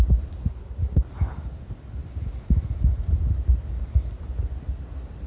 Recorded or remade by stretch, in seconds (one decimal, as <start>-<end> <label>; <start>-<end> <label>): 0.0-0.5 recorded; 0.5-1.0 remade; 1.0-5.3 recorded